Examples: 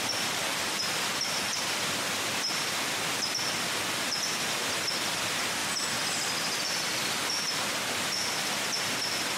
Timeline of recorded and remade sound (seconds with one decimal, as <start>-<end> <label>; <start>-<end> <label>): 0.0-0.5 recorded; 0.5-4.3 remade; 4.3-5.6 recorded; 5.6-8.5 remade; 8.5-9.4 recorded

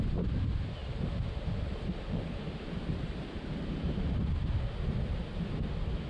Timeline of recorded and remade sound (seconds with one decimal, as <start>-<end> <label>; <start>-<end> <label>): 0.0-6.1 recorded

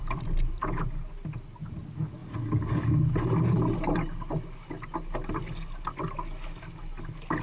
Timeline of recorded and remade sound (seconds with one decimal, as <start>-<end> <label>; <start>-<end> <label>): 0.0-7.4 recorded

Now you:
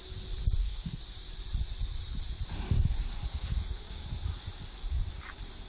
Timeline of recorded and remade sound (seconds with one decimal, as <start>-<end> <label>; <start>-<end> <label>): 0.0-0.6 recorded; 0.6-1.0 remade; 1.0-3.3 recorded; 3.3-4.0 remade; 4.0-5.7 recorded